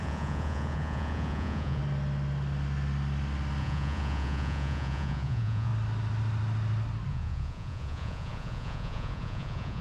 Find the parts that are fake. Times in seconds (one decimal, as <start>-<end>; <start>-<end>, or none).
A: 0.0-1.8; 3.6-5.7; 7.1-9.8